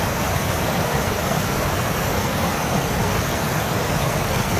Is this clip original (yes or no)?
no